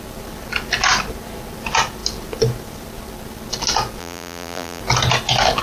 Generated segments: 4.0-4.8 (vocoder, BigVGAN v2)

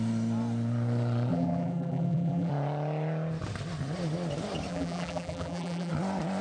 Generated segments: 1.3-2.5 (vocoder, BigVGAN v2); 4.7-5.9

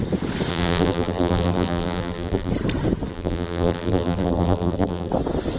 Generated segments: 0.5-2.5 (vocoder, BigVGAN v2); 3.1-5.1

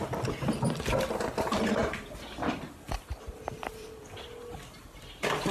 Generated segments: 1.8-4.1 (vocoder, BigVGAN v2)

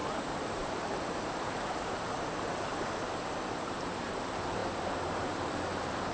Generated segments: 0.0-6.1 (vocoder, BigVGAN v2)